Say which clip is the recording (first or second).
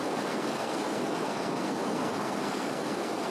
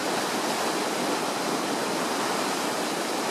second